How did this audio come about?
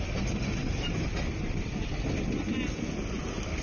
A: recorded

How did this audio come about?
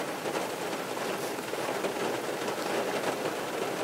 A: recorded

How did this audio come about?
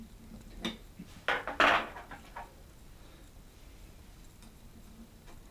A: recorded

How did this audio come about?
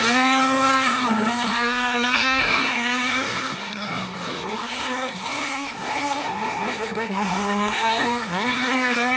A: remade